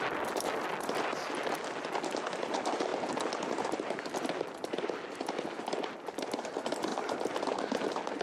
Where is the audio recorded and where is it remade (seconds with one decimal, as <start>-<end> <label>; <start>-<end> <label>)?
0.0-8.2 recorded